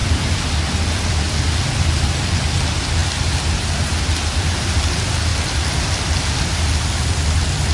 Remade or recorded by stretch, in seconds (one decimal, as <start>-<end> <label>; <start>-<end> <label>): 0.0-7.7 recorded